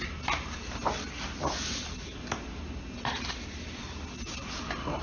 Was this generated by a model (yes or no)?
no